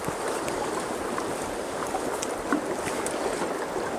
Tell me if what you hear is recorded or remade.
recorded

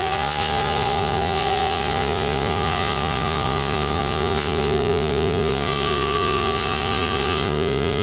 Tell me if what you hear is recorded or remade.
remade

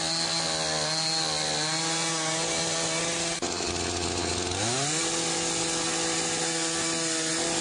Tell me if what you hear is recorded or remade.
recorded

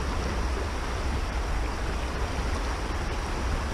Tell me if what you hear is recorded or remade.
recorded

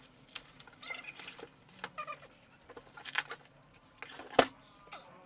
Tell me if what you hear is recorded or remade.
recorded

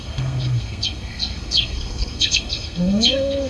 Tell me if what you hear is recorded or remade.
remade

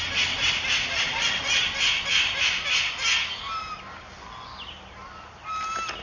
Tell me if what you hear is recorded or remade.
recorded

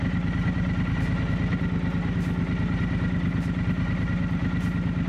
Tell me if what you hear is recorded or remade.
recorded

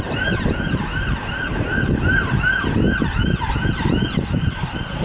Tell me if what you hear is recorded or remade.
recorded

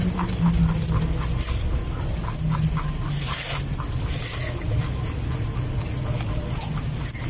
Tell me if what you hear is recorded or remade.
recorded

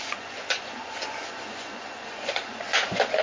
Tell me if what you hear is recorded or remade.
remade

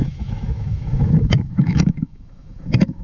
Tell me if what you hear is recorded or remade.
remade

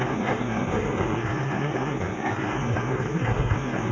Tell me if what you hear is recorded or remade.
remade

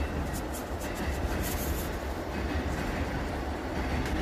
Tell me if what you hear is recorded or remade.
recorded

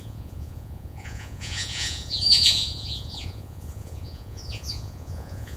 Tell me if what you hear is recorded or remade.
remade